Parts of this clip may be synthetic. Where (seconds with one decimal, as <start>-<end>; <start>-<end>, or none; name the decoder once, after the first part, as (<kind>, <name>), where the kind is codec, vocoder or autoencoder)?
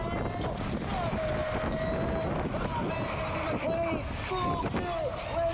none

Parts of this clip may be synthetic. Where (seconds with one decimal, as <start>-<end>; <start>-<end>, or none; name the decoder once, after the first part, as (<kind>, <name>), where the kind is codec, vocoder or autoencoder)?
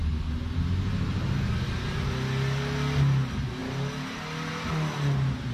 none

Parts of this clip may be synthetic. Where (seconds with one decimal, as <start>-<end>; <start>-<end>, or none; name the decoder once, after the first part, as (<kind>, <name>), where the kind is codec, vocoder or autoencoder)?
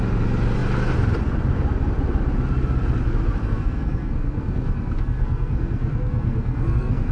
3.4-7.1 (codec, SNAC)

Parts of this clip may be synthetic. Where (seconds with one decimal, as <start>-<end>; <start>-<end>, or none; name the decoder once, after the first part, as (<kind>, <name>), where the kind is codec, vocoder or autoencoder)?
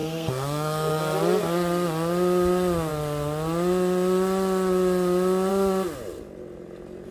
0.0-1.0 (codec, SNAC)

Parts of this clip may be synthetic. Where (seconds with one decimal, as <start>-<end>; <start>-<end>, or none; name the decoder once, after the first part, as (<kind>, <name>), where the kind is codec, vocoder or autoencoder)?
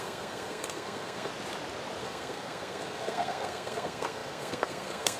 0.0-1.3 (codec, SNAC); 2.0-5.2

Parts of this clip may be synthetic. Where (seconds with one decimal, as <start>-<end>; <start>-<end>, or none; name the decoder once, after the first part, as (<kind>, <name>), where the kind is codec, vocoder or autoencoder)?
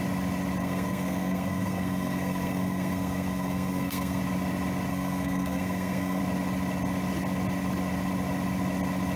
0.6-4.2 (codec, SNAC); 4.9-6.2